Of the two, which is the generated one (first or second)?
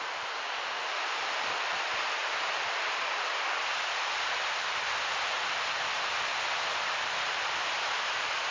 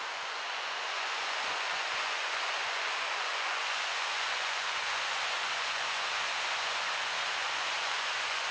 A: second